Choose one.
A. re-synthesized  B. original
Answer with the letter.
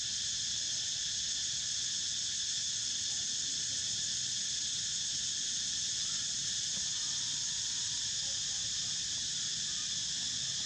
B